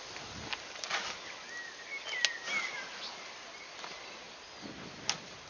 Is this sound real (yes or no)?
yes